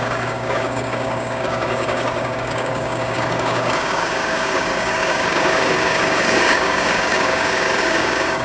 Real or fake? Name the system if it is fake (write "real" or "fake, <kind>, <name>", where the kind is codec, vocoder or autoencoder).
fake, codec, DAC